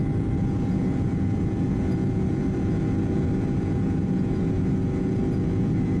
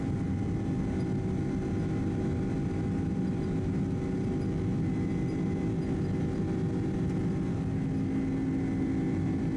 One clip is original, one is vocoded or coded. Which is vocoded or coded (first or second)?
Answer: first